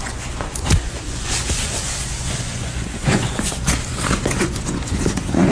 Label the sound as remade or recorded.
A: remade